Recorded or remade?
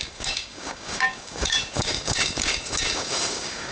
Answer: remade